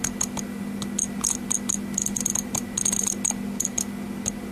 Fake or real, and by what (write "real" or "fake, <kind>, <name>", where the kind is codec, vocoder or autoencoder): real